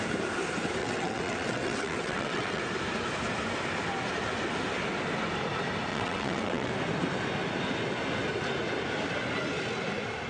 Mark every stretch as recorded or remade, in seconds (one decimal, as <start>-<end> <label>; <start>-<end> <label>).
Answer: 0.0-0.8 recorded; 0.8-2.6 remade; 2.6-5.9 recorded; 5.9-6.7 remade; 6.7-10.3 recorded